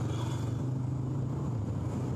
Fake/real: fake